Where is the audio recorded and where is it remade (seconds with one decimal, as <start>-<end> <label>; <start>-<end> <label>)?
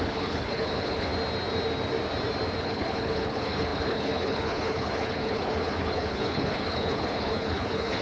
0.0-1.1 remade; 1.1-2.6 recorded; 2.6-8.0 remade